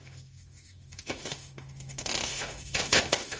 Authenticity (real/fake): fake